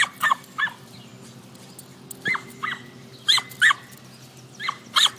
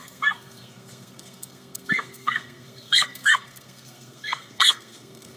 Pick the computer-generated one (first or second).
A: second